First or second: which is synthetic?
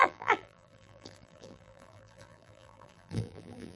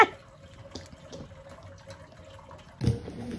first